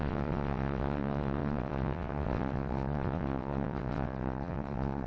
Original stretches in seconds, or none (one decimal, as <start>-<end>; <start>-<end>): none